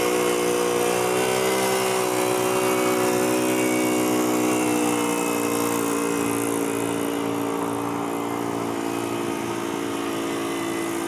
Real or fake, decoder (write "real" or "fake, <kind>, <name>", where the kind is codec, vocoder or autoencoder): real